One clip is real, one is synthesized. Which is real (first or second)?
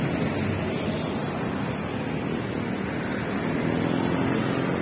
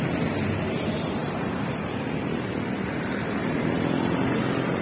first